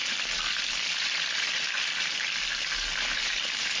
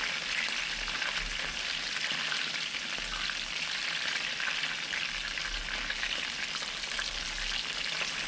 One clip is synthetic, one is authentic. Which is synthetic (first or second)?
first